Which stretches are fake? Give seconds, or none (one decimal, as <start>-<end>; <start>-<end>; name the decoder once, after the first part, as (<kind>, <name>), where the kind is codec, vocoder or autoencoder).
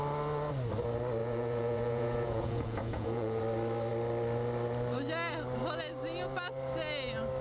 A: 1.2-3.4 (vocoder, Vocos)